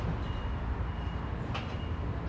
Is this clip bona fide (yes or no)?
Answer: yes